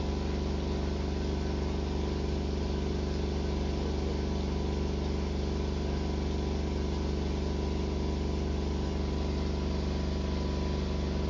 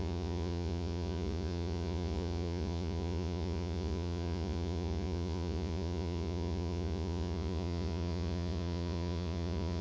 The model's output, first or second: second